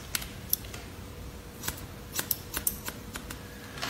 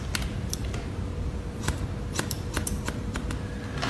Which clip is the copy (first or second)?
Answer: second